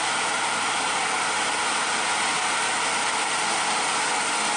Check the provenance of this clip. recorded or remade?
recorded